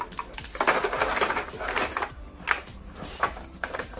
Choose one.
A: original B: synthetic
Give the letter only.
A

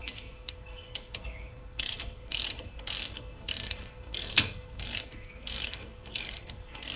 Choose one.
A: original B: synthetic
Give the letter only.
B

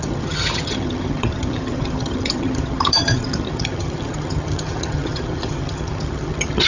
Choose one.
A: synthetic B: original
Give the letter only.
A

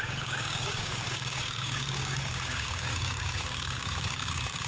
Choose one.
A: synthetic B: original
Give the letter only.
A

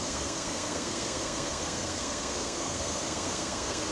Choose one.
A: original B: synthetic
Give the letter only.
B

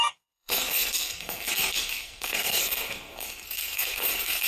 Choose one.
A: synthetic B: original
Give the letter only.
A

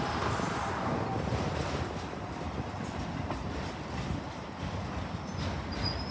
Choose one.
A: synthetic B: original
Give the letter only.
B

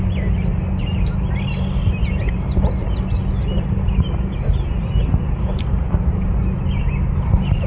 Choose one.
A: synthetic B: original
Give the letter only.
B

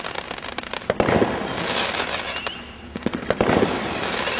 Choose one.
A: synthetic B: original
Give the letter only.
B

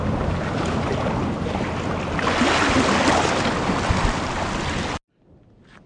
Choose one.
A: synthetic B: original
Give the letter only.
B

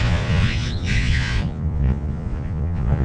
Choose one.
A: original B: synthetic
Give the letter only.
B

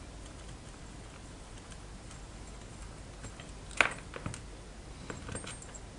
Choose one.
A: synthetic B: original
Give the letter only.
B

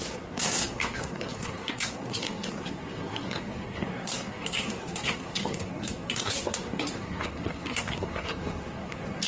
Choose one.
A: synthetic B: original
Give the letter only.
A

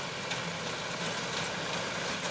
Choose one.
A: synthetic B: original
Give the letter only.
B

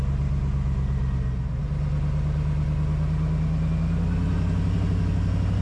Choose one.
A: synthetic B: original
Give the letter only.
B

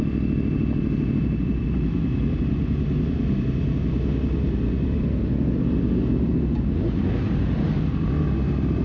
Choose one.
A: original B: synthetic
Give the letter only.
A